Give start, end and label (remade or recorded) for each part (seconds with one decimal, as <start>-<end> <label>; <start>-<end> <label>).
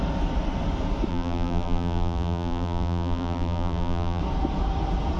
0.0-1.1 recorded; 1.1-4.2 remade; 4.2-5.2 recorded